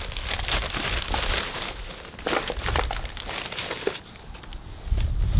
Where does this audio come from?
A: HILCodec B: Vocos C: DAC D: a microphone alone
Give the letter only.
D